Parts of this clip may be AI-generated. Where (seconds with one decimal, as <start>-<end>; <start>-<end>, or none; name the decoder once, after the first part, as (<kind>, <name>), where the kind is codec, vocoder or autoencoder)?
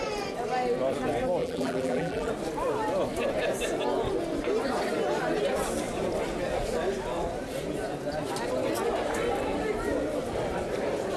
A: 1.4-2.3 (vocoder, BigVGAN v2)